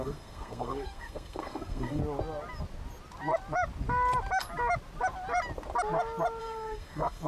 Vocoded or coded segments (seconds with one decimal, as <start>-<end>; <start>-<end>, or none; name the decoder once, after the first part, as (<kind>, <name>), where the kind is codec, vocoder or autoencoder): 0.0-2.0 (codec, SNAC); 6.4-7.3